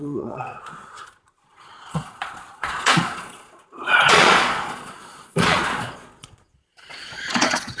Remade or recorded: remade